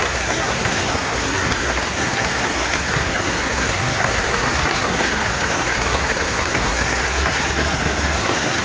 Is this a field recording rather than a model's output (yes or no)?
no